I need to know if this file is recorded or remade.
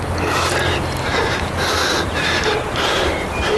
recorded